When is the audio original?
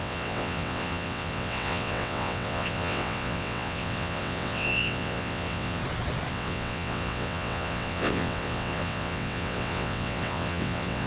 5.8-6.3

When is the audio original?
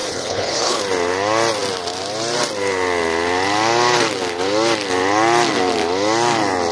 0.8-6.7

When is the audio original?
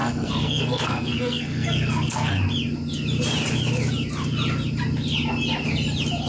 2.4-6.3